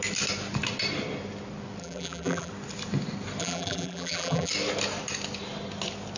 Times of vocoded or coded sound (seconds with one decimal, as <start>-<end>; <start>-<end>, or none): 1.8-2.5; 3.4-4.5